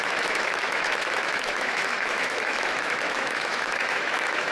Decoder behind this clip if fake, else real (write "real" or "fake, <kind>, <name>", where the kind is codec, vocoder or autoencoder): fake, autoencoder, DAC-VAE